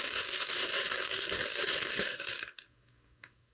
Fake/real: fake